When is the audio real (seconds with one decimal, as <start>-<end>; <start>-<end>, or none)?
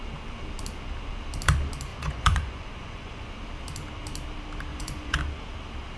0.0-1.9; 3.3-4.7; 5.2-6.0